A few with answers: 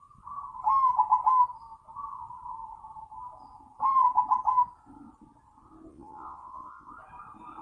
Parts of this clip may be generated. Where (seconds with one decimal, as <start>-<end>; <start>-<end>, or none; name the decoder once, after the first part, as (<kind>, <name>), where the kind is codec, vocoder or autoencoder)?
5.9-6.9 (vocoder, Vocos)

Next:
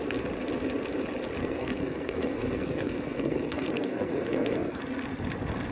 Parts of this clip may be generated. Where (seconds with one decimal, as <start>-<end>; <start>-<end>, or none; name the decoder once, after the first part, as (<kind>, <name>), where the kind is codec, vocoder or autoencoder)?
1.4-4.8 (codec, SNAC)

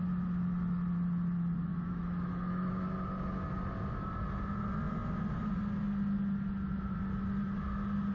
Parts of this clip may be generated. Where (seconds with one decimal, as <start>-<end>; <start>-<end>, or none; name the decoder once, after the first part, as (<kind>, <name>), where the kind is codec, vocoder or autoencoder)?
1.7-2.7 (autoencoder, DAC-VAE)

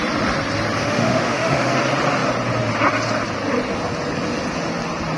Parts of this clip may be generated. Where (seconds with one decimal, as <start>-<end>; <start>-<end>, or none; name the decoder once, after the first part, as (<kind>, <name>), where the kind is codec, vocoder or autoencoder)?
0.8-1.7 (autoencoder, DAC-VAE)